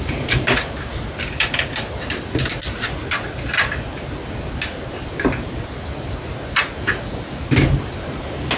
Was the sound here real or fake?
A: real